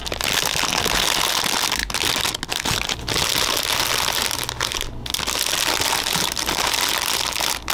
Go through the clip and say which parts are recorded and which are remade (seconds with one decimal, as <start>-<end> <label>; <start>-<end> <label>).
0.0-7.7 recorded